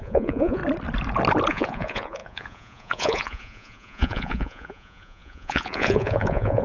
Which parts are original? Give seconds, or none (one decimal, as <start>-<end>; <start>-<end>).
0.6-1.5